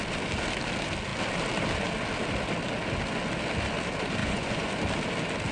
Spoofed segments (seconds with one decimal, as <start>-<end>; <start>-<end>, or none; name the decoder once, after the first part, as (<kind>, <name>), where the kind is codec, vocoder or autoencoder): 4.2-4.7 (vocoder, Vocos)